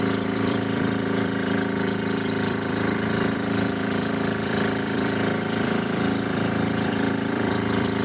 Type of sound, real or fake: fake